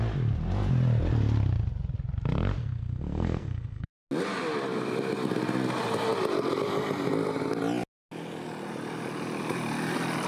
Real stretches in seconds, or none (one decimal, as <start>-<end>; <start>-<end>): 0.0-2.6; 4.0-10.3

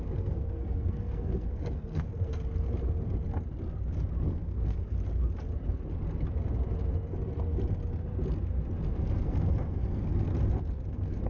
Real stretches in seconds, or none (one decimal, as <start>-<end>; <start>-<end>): 2.3-4.2; 5.0-8.9; 10.3-10.9

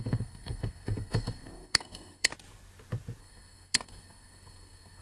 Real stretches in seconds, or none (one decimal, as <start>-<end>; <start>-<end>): 2.3-3.2

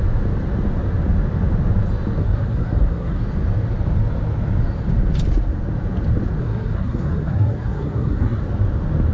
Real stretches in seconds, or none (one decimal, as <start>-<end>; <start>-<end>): 0.0-2.2; 3.2-6.4; 8.4-9.1

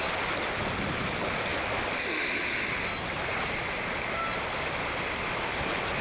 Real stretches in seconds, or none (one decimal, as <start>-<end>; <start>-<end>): 0.0-6.0